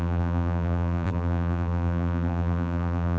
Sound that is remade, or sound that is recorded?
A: remade